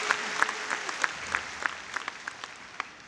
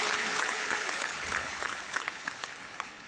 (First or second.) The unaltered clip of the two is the first